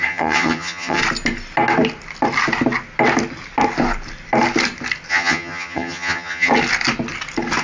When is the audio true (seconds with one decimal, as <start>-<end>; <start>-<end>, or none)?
1.0-5.1; 6.5-7.6